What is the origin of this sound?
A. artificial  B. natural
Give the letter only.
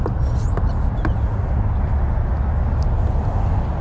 B